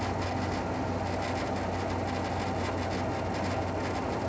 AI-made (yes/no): no